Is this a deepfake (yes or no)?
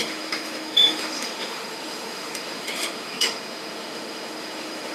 yes